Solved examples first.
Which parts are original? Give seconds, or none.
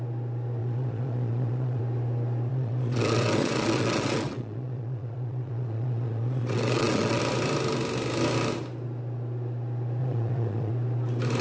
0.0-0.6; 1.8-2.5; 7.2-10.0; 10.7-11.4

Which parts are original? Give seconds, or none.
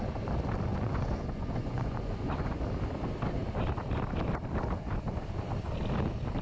0.0-0.7; 2.6-6.4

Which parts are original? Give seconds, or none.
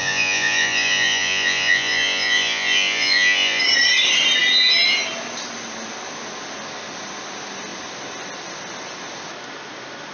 3.6-10.1